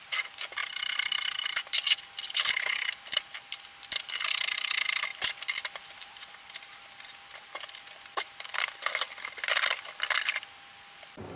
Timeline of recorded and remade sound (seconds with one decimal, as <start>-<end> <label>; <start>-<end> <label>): 0.0-11.4 recorded